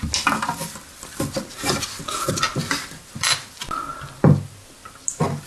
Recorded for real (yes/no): yes